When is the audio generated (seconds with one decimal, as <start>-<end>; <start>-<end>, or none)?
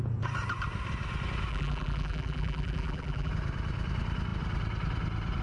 1.5-3.3